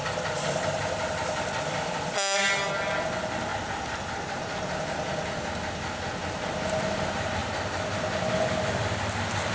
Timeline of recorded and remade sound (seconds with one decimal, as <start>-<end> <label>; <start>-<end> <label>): 0.0-3.5 recorded; 3.5-4.7 remade; 4.7-9.5 recorded

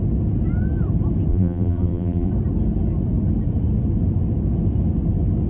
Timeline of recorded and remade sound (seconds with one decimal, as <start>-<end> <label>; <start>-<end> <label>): 0.0-1.3 recorded; 1.3-2.3 remade; 2.3-5.5 recorded

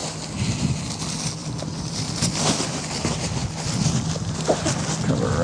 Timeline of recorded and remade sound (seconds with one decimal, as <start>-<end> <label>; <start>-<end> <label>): 0.0-1.4 recorded; 1.4-2.8 remade; 2.8-3.4 recorded; 3.4-4.8 remade; 4.8-5.4 recorded

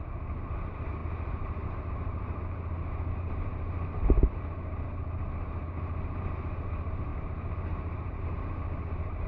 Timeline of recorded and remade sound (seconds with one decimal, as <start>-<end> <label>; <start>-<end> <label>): 0.0-9.3 remade